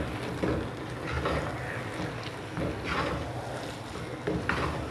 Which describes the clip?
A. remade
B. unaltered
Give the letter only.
B